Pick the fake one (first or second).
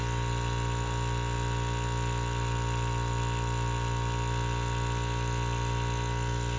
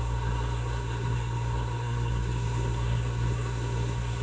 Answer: second